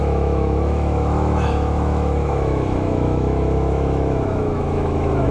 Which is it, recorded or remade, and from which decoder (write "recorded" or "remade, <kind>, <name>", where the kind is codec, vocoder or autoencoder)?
remade, autoencoder, DAC-VAE